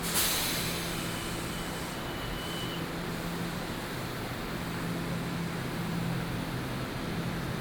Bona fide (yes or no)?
yes